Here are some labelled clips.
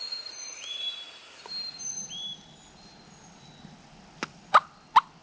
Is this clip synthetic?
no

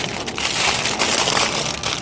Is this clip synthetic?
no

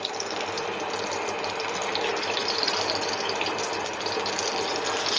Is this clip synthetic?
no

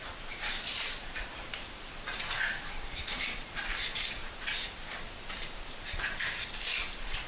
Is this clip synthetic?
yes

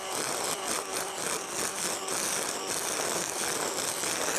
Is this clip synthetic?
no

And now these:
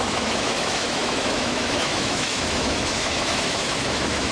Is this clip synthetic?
yes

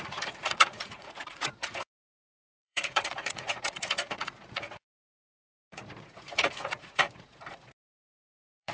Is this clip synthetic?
yes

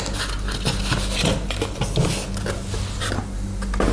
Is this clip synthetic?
no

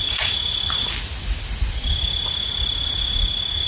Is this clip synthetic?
no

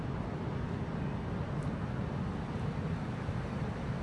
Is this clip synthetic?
no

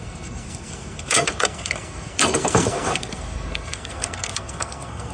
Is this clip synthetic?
yes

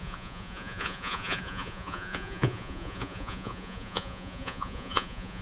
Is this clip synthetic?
yes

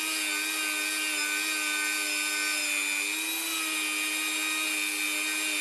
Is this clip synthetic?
no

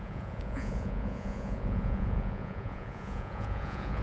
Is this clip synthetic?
yes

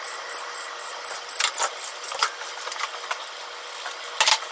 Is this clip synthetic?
no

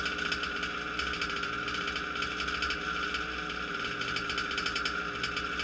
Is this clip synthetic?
no